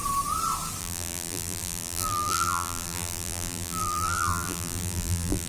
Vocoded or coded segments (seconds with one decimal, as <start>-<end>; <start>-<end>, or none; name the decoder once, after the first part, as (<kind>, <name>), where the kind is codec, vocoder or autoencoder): 0.8-5.5 (vocoder, BigVGAN v2)